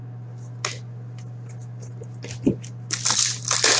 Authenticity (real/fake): real